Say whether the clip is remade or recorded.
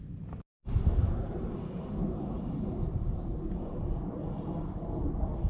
recorded